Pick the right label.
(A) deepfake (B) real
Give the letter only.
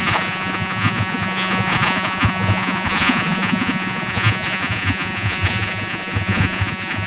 A